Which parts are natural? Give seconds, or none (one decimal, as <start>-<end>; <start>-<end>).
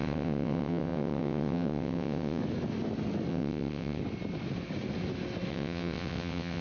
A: 2.4-3.3; 4.0-5.5